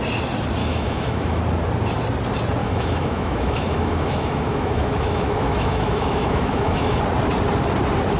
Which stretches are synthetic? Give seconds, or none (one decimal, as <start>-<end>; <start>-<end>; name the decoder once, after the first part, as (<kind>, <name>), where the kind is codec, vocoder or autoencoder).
0.6-1.4 (autoencoder, DAC-VAE); 2.6-7.0